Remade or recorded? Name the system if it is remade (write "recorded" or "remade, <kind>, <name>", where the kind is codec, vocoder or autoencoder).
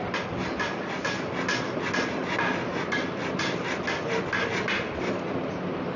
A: recorded